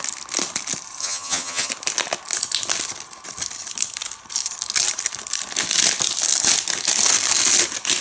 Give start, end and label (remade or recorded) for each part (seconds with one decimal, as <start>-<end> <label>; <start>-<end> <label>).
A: 0.0-1.0 recorded; 1.0-1.7 remade; 1.7-8.0 recorded